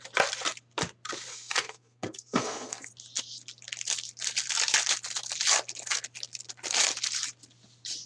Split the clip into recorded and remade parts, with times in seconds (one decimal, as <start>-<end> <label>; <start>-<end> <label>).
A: 0.0-1.3 recorded; 1.3-2.9 remade; 2.9-8.1 recorded